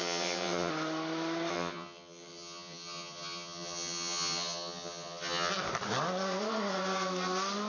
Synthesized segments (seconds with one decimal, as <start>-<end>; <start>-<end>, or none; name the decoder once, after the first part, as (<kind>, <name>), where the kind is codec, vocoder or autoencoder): 0.0-0.7 (vocoder, HiFi-GAN); 1.5-5.5

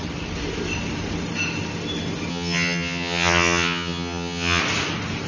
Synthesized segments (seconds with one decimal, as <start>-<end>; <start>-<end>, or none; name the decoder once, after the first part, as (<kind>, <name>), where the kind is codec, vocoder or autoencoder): 2.3-4.6 (vocoder, HiFi-GAN)

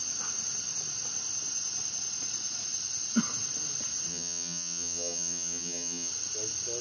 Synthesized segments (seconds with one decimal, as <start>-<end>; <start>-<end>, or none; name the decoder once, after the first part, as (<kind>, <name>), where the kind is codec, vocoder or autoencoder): 4.1-6.1 (vocoder, HiFi-GAN)

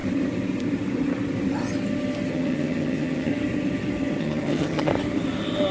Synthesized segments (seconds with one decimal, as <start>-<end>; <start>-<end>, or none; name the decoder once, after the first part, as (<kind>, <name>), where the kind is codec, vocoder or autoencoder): 2.3-3.3 (vocoder, HiFi-GAN); 4.2-4.9

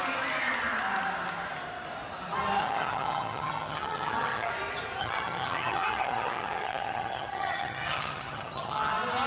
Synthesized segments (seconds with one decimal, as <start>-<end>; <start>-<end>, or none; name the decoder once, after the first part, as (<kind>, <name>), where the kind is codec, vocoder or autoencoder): 2.6-4.5 (vocoder, HiFi-GAN); 5.0-8.9

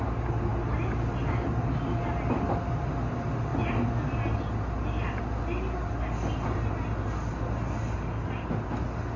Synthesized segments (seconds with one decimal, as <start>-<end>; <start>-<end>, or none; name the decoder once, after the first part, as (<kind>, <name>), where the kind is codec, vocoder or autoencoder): none

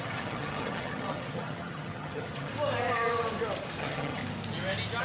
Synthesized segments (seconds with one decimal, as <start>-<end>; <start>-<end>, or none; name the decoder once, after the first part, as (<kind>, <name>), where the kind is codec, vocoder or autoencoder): 0.0-2.5 (vocoder, HiFi-GAN); 3.8-4.2